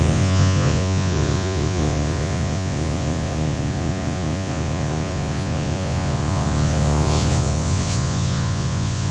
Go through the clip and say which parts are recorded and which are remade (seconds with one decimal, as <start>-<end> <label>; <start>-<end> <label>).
0.0-9.1 remade